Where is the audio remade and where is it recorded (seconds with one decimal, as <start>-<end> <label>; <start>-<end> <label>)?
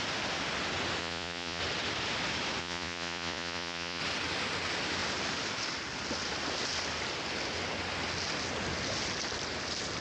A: 0.0-1.0 recorded; 1.0-1.6 remade; 1.6-2.6 recorded; 2.6-4.0 remade; 4.0-10.0 recorded